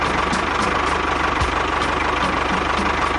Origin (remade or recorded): remade